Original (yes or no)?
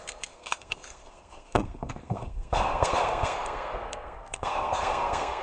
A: no